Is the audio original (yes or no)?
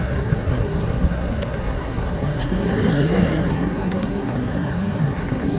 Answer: no